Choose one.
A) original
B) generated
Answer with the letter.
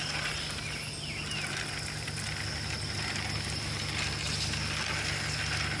A